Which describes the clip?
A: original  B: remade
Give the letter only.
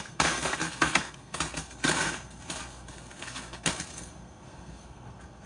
B